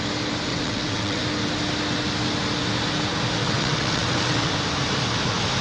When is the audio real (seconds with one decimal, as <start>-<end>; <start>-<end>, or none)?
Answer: 0.0-0.5; 1.2-3.4; 4.5-5.6